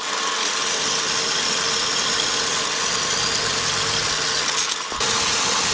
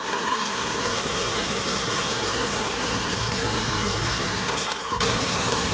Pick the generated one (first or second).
second